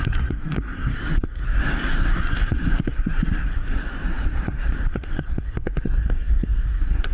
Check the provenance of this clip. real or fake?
fake